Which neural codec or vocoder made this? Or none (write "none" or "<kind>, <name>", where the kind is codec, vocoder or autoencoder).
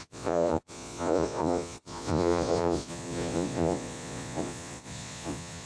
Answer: vocoder, Vocos